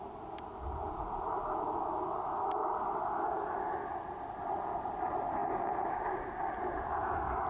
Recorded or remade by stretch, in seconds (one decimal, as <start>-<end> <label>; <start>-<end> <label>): 0.0-7.5 recorded